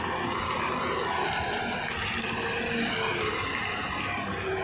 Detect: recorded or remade recorded